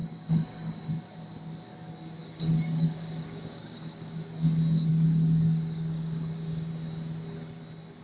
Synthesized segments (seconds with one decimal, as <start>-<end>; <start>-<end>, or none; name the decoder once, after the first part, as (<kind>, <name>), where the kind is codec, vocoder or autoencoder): 0.0-0.9 (codec, DAC); 2.2-4.2; 4.9-6.7